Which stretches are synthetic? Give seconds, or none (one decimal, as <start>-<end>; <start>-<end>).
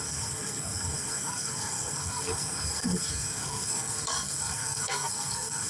0.0-5.7